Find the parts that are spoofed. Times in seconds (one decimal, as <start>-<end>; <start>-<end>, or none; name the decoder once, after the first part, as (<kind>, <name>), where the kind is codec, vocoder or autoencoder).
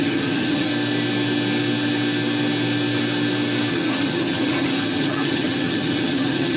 0.0-0.7 (vocoder, HiFi-GAN); 3.7-6.6